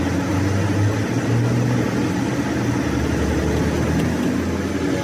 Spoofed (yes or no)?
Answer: no